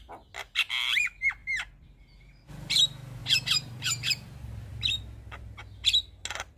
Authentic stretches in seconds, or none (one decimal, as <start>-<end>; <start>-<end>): 0.0-1.4; 2.0-3.2; 5.0-6.6